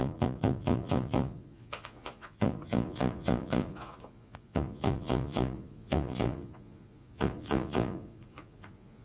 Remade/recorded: remade